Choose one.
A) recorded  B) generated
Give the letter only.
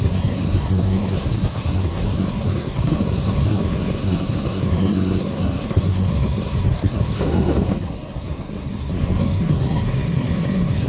B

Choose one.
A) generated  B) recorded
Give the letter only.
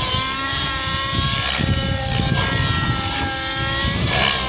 B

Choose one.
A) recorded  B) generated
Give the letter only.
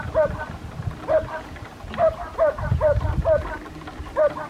B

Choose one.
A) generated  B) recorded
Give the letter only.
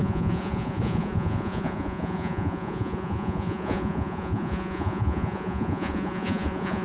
A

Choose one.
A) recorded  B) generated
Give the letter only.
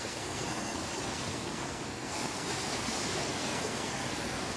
B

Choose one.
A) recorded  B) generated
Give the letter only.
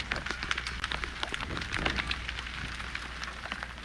A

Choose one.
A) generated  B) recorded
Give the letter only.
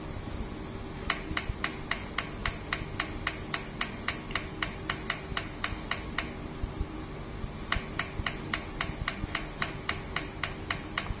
B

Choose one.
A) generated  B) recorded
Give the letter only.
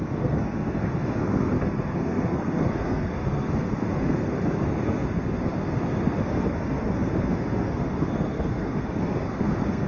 A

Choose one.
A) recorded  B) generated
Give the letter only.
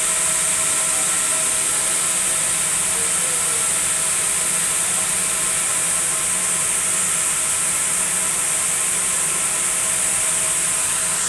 A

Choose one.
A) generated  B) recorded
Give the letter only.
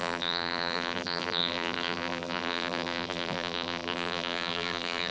A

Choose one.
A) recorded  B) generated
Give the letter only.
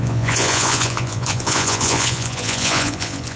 B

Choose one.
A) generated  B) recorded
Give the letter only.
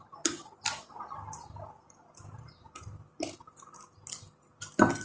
B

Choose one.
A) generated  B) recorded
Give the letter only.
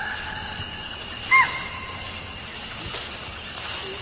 B